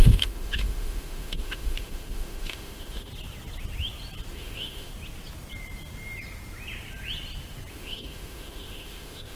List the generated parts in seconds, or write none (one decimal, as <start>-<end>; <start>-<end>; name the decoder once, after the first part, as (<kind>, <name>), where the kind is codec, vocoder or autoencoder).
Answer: 0.0-3.1 (autoencoder, DAC-VAE); 4.3-4.9; 7.7-9.4